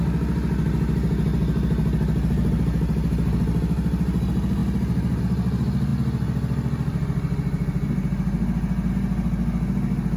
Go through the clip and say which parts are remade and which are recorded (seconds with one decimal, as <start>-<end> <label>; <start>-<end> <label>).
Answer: 0.0-10.2 recorded